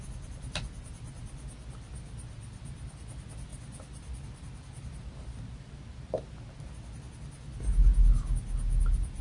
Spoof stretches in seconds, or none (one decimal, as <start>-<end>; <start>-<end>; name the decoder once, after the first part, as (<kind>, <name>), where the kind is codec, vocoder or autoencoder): none